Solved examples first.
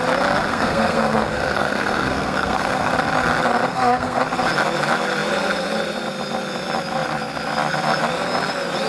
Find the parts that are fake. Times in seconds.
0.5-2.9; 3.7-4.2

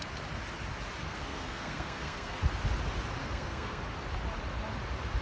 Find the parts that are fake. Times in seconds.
1.0-2.4; 3.2-3.8

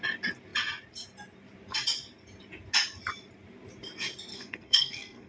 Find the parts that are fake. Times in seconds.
4.3-5.3

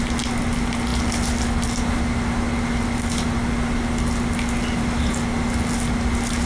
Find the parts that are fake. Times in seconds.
none

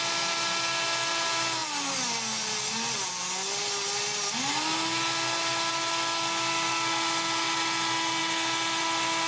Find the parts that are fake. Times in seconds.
none

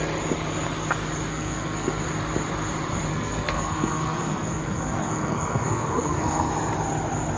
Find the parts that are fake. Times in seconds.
1.3-2.0; 3.1-6.5

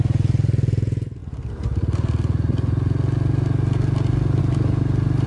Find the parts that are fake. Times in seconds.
none

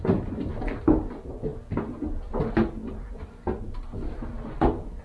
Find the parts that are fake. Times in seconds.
none